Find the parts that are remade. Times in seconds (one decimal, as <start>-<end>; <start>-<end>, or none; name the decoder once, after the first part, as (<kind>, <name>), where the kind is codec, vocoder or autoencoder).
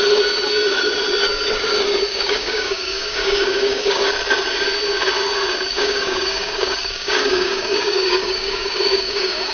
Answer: 2.1-4.1 (codec, DAC); 5.7-9.5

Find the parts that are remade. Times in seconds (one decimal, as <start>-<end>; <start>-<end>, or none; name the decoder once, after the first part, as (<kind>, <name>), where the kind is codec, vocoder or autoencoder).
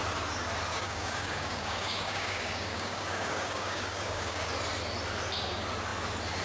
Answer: 0.7-4.5 (codec, DAC)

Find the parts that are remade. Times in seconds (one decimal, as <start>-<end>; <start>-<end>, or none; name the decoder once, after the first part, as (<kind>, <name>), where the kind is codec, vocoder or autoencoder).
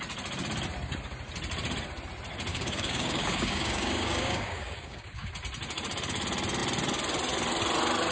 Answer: 2.5-5.3 (codec, DAC)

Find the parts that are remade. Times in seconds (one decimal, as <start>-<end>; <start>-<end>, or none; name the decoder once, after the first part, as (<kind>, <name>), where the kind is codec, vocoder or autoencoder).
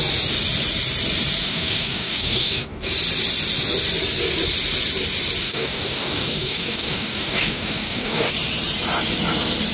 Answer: 1.4-2.9 (codec, DAC); 5.4-8.3